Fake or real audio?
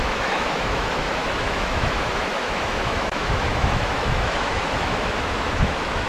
fake